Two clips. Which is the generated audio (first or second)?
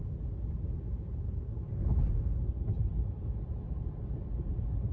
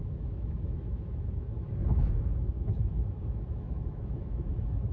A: second